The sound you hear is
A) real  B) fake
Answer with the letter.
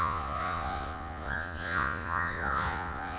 B